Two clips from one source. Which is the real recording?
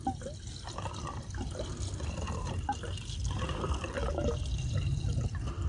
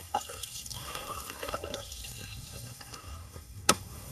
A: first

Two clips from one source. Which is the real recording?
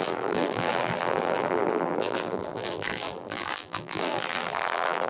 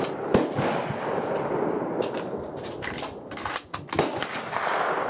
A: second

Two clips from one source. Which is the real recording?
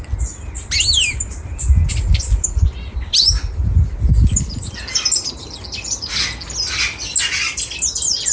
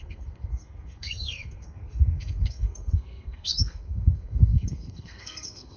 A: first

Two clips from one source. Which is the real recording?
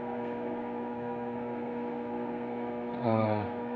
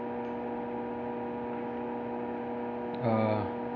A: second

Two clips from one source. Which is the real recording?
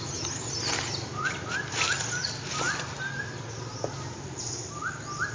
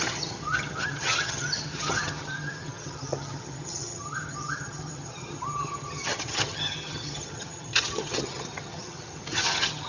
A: first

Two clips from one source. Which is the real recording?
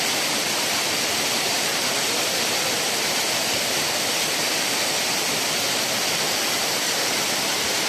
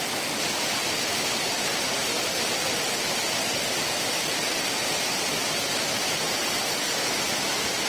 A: second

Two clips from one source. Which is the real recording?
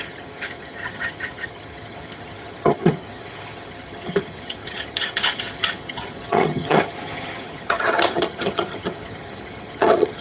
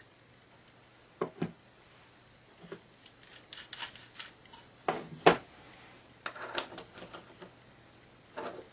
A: second